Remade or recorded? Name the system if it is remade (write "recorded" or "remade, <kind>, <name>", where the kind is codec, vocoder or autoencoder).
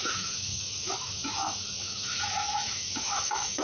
remade, autoencoder, DAC-VAE